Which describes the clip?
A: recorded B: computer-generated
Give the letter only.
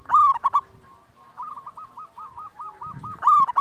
A